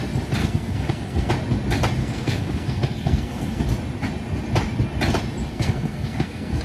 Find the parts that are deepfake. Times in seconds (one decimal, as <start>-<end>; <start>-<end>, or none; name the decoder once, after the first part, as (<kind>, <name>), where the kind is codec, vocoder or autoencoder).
0.4-1.3 (codec, SNAC); 2.0-3.6; 5.5-6.6